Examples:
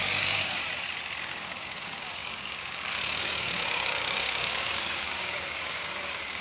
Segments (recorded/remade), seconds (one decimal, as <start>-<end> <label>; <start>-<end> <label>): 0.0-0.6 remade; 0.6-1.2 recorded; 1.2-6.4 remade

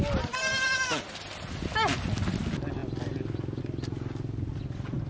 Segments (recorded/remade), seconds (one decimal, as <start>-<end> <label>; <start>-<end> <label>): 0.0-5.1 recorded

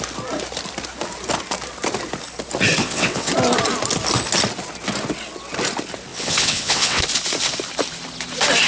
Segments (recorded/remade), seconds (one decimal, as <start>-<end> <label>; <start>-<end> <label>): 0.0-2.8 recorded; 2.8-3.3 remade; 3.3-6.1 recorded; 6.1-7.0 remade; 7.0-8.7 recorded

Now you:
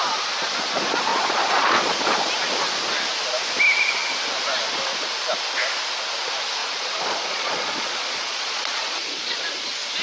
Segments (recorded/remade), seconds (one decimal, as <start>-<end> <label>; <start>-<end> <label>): 0.0-1.1 recorded; 1.1-1.9 remade; 1.9-6.6 recorded; 6.6-9.4 remade; 9.4-10.0 recorded

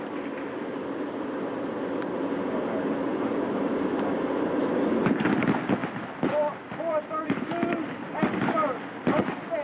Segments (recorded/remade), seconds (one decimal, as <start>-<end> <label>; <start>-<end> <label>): 0.0-9.6 recorded